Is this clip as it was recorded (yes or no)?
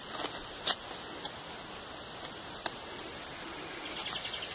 yes